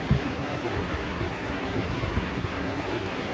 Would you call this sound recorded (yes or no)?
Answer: no